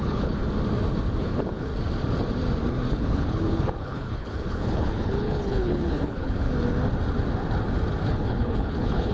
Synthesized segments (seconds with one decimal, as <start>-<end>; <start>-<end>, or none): 0.0-0.4; 1.2-1.7; 2.9-6.5; 8.1-9.1